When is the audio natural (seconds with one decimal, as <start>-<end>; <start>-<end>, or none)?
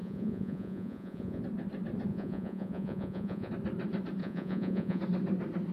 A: 1.4-2.1; 3.5-4.2; 5.0-5.7